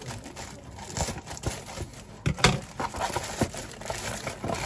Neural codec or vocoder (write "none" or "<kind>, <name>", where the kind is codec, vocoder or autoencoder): none